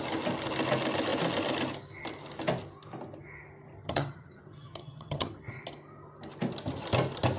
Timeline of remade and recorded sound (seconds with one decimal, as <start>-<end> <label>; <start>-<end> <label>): 0.0-3.8 recorded; 3.8-5.3 remade; 5.3-7.4 recorded